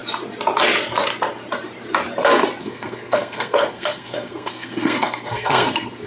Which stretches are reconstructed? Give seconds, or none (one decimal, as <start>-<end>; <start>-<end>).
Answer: 2.6-6.1